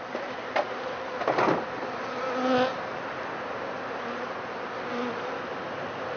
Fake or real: real